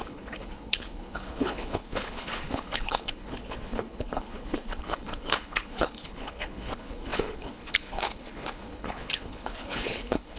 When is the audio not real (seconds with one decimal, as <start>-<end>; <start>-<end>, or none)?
0.0-10.4